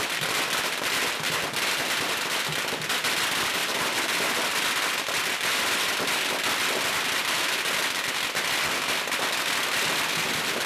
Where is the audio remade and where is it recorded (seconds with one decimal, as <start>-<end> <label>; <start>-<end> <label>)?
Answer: 0.0-10.7 recorded